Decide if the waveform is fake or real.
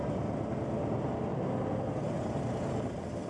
real